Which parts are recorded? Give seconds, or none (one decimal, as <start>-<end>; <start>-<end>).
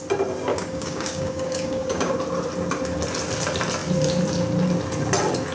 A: 0.0-0.5; 2.1-5.5